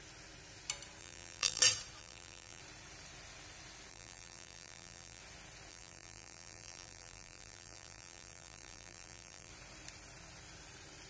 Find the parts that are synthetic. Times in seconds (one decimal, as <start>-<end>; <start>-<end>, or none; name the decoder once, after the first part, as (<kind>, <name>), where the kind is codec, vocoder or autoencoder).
1.0-1.6 (vocoder, BigVGAN v2); 2.0-2.6; 3.9-5.2; 5.7-9.5